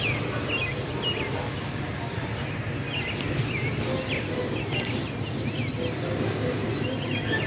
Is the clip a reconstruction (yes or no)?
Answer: no